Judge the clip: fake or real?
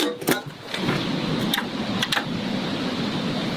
real